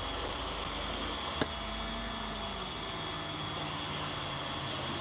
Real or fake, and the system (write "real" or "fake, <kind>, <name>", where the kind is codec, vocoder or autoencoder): real